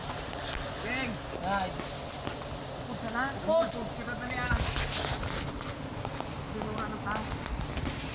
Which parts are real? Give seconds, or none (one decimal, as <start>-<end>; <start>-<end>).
0.0-8.1